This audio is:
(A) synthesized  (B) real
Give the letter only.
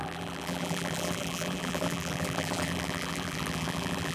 A